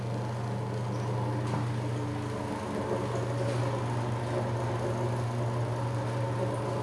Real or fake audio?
real